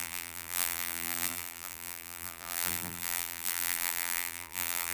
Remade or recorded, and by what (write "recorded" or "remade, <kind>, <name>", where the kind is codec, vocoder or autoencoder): remade, vocoder, BigVGAN v2